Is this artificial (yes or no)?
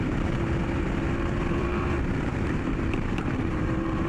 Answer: yes